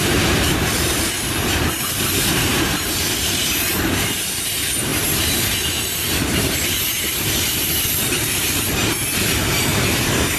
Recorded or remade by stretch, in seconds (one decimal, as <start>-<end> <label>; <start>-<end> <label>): 0.0-10.4 remade